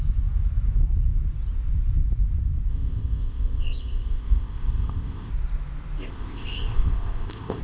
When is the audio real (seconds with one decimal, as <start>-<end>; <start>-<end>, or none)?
0.0-2.7; 5.3-6.0